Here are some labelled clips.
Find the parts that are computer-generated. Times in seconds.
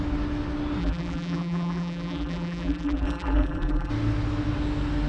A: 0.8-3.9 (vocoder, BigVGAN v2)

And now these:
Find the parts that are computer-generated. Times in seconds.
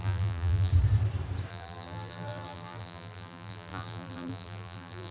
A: 0.0-0.7 (vocoder, BigVGAN v2); 1.5-5.1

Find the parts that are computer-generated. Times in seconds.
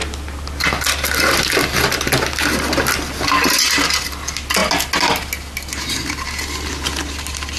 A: none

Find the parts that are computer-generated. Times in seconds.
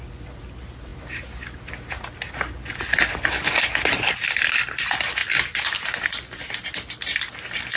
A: none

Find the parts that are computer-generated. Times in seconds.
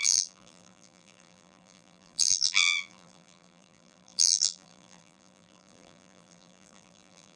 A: 0.0-7.4 (vocoder, BigVGAN v2)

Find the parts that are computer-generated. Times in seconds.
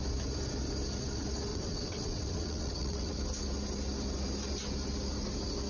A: 1.5-3.2 (vocoder, WaveNeXt)